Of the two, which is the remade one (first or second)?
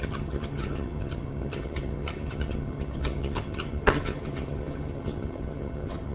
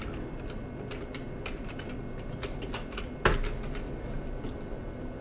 first